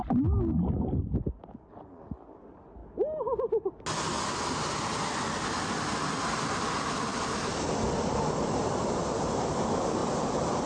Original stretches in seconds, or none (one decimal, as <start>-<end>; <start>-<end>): 0.0-7.1; 7.6-10.0